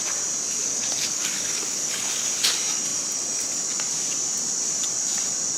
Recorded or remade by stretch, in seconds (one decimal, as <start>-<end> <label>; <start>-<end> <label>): 0.0-0.6 recorded; 0.6-2.3 remade; 2.3-5.6 recorded